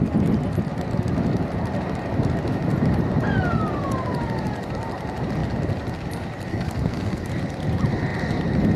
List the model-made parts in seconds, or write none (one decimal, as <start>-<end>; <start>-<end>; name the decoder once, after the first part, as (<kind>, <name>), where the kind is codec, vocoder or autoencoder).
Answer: 6.5-7.3 (codec, SNAC)

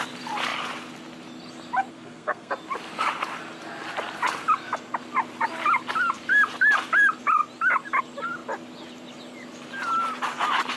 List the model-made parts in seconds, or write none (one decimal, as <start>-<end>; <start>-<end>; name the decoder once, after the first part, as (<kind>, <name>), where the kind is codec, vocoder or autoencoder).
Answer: 1.9-2.5 (codec, SNAC)